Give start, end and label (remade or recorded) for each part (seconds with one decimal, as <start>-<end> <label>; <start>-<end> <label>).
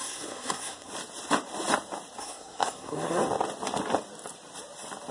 0.0-0.9 remade; 0.9-2.2 recorded; 2.2-3.2 remade; 3.2-5.1 recorded